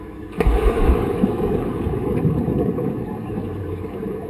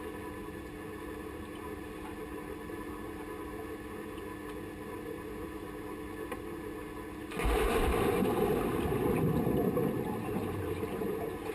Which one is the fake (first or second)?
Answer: first